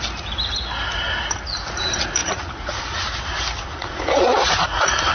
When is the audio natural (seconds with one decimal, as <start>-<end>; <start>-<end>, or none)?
0.0-2.2; 3.0-3.7